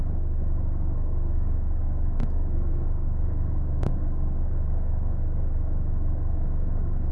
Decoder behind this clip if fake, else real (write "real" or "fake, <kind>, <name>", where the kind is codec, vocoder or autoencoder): fake, codec, SNAC